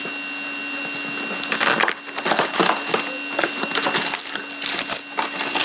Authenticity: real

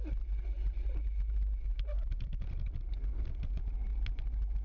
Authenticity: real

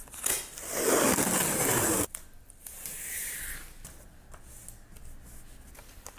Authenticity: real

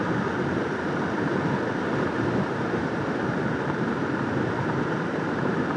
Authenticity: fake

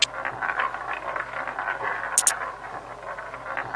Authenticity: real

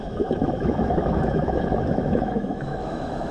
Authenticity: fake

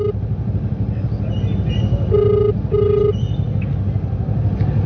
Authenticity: real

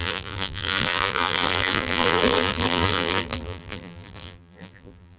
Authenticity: fake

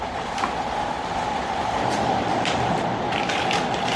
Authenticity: fake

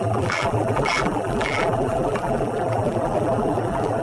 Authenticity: fake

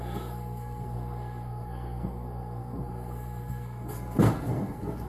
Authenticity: fake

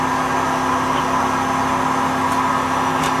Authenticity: real